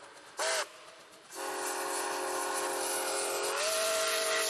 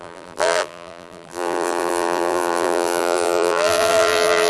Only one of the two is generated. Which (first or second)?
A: second